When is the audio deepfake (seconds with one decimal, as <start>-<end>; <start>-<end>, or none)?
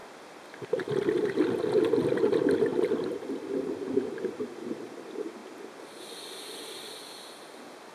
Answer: none